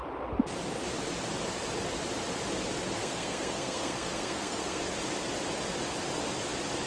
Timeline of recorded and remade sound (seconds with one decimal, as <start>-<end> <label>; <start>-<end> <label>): 0.0-3.0 recorded; 3.0-4.8 remade; 4.8-6.9 recorded